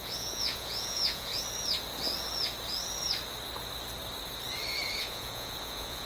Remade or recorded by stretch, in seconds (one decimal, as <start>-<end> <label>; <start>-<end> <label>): 0.0-1.3 remade; 1.3-5.0 recorded; 5.0-6.1 remade